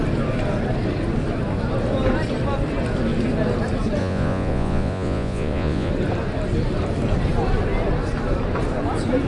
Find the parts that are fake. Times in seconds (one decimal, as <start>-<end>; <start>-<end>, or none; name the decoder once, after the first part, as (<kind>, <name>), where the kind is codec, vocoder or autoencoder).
4.0-5.9 (vocoder, Vocos)